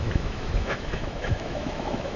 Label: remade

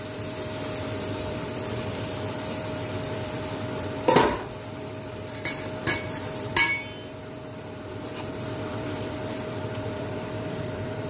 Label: remade